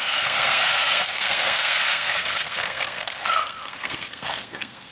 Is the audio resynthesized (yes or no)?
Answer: yes